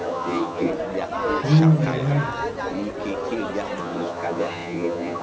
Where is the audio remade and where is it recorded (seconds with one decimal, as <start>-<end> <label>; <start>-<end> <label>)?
0.0-0.7 remade; 0.7-3.8 recorded; 3.8-5.2 remade